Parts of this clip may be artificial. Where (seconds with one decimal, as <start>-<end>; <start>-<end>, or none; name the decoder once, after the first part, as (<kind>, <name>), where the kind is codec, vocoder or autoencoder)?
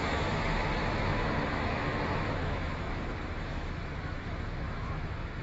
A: 0.0-5.4 (autoencoder, DAC-VAE)